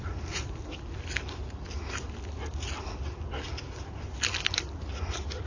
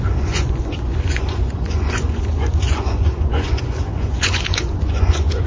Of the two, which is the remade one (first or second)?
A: second